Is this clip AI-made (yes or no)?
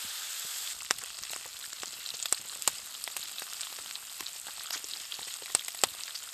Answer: no